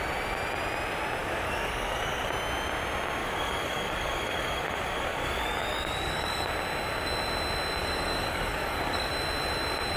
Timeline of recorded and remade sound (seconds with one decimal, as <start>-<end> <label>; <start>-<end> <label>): 0.0-1.2 recorded; 1.2-2.3 remade; 2.3-3.2 recorded; 3.2-6.5 remade; 6.5-7.8 recorded; 7.8-9.1 remade; 9.1-10.0 recorded